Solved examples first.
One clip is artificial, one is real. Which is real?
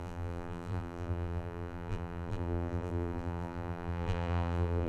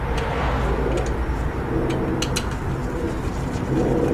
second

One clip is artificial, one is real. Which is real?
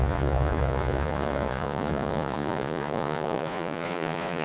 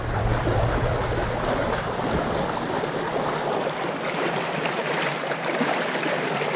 second